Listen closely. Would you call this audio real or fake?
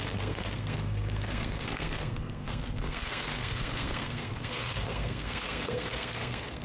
fake